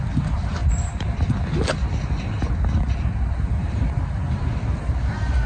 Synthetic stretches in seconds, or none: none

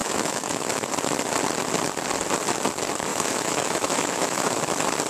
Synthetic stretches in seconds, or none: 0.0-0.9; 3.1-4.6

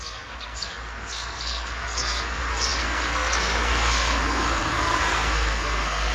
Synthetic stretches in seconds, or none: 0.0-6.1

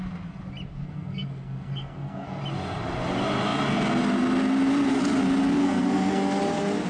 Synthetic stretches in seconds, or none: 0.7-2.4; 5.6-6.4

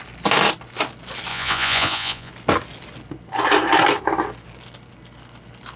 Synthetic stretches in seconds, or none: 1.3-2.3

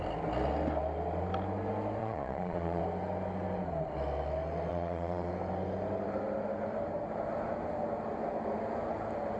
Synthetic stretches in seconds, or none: 2.0-2.8; 4.7-5.3

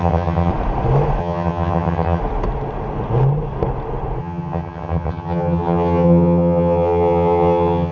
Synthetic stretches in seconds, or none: 0.0-0.5; 1.2-2.2; 4.2-7.9

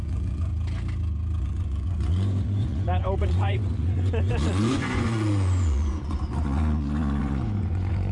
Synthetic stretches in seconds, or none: 0.0-0.5; 1.4-8.1